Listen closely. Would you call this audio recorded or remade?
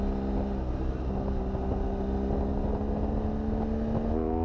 recorded